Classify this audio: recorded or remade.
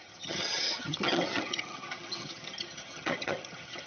remade